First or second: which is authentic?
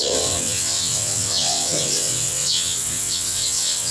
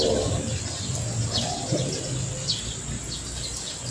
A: second